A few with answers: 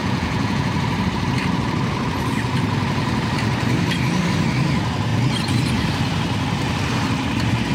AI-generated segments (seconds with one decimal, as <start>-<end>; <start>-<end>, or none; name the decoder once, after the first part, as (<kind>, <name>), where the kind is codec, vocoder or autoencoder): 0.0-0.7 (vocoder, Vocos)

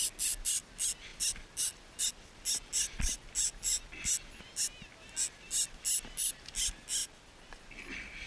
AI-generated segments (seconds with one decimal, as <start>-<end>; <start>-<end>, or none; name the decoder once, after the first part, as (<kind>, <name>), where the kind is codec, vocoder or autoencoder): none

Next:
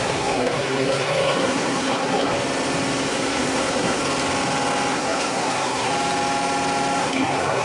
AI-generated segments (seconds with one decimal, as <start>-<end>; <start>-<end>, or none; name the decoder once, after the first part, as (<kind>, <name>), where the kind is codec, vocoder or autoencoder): 0.0-2.3 (codec, SNAC); 3.1-4.0; 4.9-5.9; 7.0-7.6

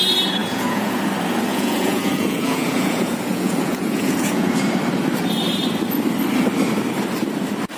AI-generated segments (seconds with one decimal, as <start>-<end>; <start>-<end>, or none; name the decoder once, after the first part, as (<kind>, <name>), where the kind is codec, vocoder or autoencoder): 0.4-1.0 (vocoder, Vocos); 1.5-4.6

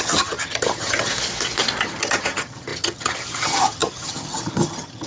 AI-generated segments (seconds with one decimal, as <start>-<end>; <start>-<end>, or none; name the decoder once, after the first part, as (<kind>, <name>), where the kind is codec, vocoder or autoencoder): 0.0-1.1 (vocoder, HiFi-GAN); 1.8-5.1

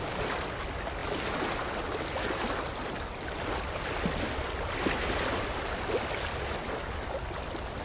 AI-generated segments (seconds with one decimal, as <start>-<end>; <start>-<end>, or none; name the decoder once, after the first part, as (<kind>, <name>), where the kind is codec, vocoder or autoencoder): none

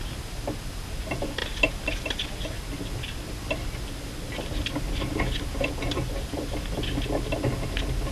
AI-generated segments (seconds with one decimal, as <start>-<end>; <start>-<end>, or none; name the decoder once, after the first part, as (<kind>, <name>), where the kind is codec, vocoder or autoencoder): none